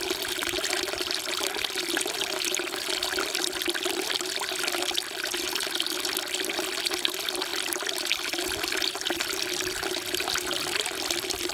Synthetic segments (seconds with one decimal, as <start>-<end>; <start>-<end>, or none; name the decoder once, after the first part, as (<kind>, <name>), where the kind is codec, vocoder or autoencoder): none